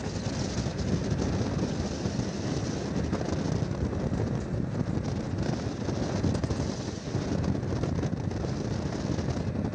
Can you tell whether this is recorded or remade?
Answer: recorded